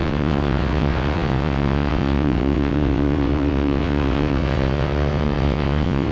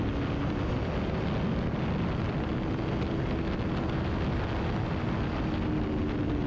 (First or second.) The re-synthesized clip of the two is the first